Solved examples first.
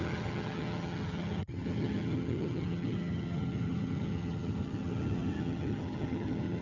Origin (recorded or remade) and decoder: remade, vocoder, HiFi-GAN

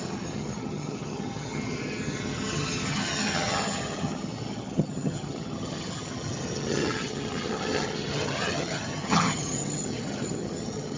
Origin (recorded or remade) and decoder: remade, vocoder, HiFi-GAN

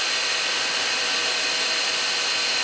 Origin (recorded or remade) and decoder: recorded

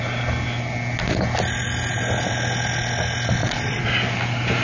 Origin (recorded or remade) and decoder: recorded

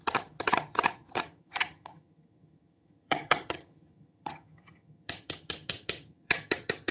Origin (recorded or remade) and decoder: remade, vocoder, HiFi-GAN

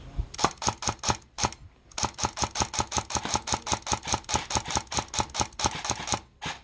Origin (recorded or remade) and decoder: recorded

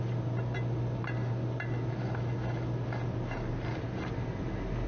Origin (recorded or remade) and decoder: recorded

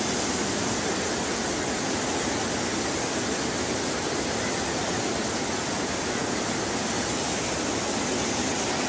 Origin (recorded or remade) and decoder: recorded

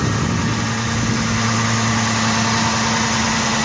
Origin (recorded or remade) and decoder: recorded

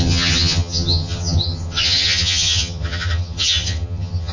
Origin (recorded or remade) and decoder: remade, vocoder, HiFi-GAN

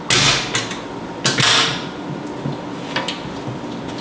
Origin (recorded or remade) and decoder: recorded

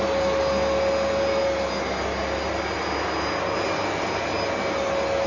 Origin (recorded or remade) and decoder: recorded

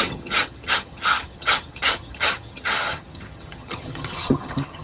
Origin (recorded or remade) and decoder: remade, vocoder, HiFi-GAN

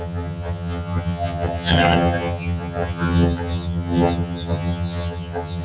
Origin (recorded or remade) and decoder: remade, vocoder, HiFi-GAN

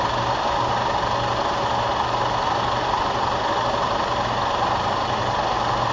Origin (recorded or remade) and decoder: recorded